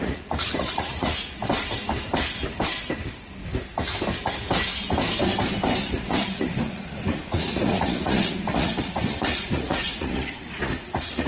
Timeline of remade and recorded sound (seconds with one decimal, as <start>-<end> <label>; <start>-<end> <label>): 0.0-1.4 remade; 1.4-5.8 recorded; 5.8-11.3 remade